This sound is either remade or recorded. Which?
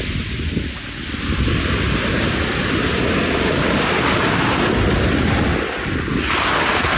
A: recorded